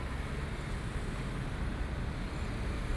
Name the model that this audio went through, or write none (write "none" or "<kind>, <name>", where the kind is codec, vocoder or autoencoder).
none